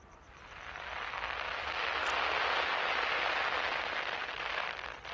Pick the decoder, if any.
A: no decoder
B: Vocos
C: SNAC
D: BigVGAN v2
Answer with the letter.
A